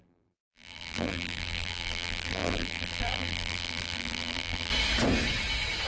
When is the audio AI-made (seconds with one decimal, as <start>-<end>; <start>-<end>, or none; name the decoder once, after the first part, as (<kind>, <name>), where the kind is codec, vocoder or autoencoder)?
0.0-4.7 (vocoder, BigVGAN v2)